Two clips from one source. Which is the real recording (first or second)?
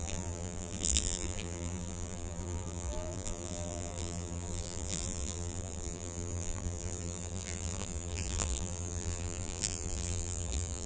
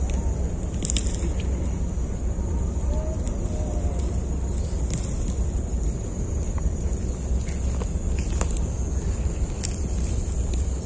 second